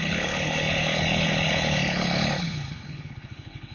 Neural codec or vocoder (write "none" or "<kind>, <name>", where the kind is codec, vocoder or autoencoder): codec, HILCodec